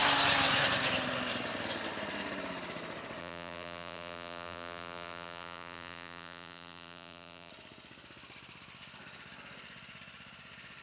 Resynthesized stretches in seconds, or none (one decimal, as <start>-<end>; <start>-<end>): 3.2-7.5